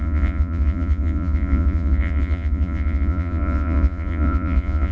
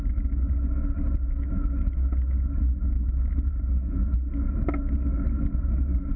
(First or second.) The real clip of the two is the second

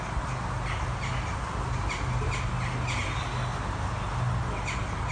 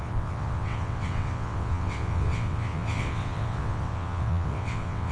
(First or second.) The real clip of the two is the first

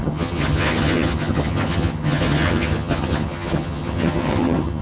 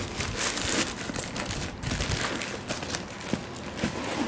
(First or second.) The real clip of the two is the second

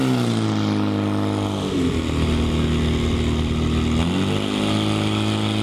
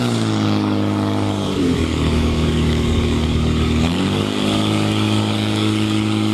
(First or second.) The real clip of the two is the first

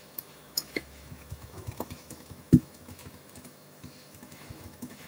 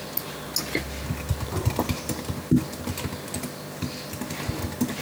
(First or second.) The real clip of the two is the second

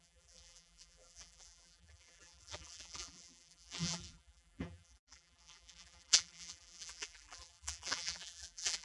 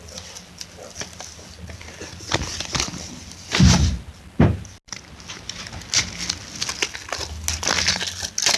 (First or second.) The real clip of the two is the second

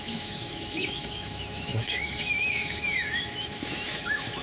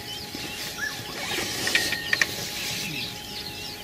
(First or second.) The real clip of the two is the second